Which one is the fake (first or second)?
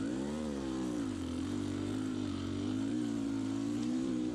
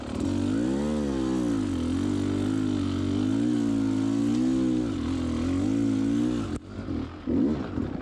first